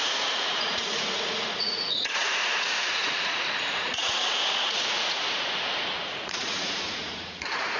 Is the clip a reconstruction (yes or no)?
yes